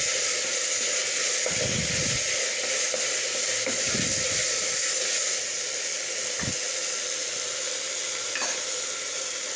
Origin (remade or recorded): recorded